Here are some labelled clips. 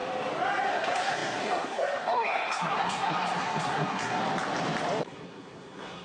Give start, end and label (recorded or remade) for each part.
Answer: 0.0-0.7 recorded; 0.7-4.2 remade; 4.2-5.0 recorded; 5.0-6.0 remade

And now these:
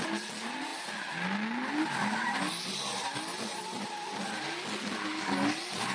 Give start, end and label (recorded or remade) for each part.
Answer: 0.0-5.9 recorded

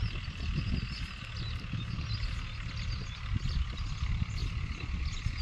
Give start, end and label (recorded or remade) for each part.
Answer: 0.0-5.4 recorded

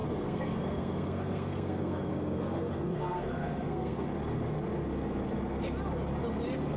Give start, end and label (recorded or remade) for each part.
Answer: 0.0-4.1 remade; 4.1-6.8 recorded

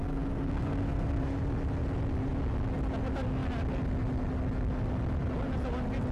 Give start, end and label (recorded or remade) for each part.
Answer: 0.0-1.4 remade; 1.4-6.1 recorded

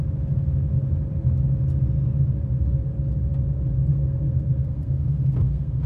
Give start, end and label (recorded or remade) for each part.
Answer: 0.0-3.9 recorded; 3.9-5.9 remade

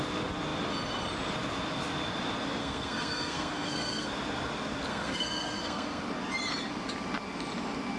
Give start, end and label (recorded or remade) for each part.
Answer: 0.0-2.6 recorded; 2.6-4.1 remade; 4.1-4.9 recorded; 4.9-6.0 remade; 6.0-8.0 recorded